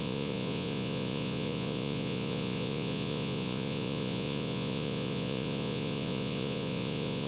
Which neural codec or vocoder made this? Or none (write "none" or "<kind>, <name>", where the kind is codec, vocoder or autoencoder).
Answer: vocoder, Vocos